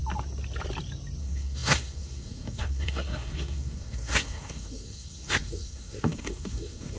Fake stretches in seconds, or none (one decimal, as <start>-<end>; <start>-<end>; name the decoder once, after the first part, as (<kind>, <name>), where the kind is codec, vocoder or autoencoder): 1.2-7.0 (codec, SNAC)

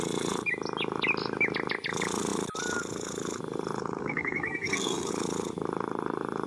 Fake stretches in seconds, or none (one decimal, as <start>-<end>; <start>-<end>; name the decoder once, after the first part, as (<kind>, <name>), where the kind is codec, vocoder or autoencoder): 4.0-5.1 (codec, SNAC)

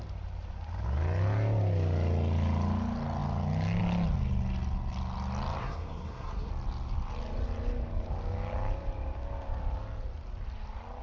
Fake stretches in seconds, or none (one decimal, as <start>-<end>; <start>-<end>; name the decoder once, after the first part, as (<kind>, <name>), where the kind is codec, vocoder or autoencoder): 5.6-6.5 (codec, SNAC)